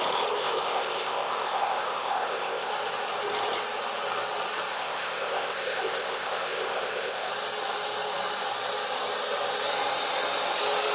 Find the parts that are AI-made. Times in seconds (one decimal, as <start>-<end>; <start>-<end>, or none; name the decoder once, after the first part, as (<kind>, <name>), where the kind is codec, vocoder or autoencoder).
0.4-2.7 (codec, ZipCodec); 4.7-7.3